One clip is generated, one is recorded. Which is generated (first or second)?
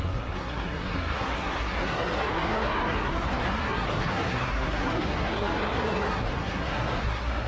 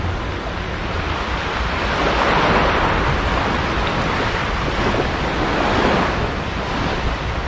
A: first